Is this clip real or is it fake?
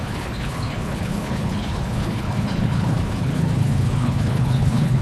fake